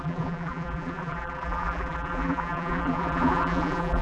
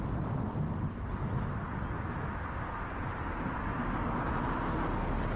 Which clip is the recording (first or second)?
second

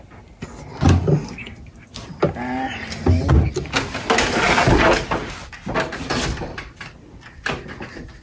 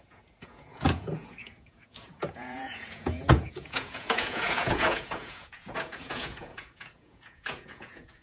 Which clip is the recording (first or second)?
first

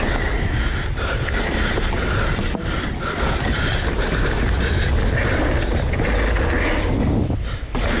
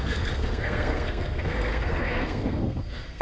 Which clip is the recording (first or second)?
first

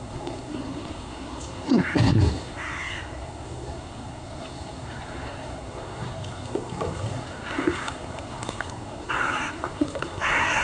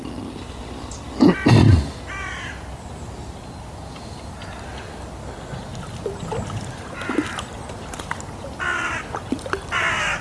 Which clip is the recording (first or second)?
second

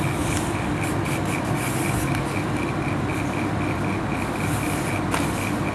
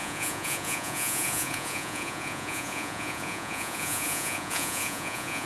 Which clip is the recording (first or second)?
first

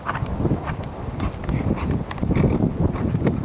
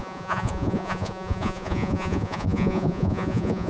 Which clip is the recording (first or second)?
first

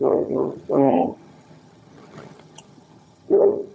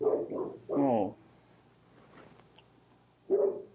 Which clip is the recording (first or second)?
second